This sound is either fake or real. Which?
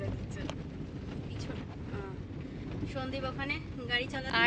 real